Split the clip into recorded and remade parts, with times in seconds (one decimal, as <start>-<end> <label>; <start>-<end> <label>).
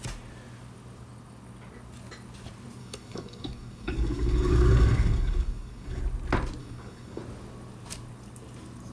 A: 0.0-2.8 recorded; 2.8-6.0 remade; 6.0-6.6 recorded; 6.6-7.2 remade; 7.2-8.9 recorded